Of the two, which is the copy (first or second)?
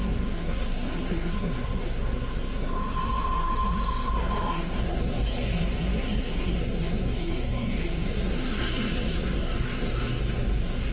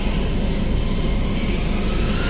first